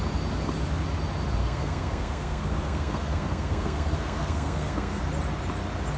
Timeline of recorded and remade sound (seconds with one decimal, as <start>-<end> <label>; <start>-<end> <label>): 0.0-1.4 recorded; 1.4-5.0 remade; 5.0-6.0 recorded